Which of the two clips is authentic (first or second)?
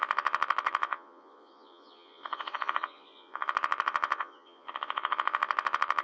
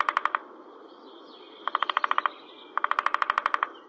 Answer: second